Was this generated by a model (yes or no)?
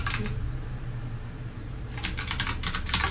no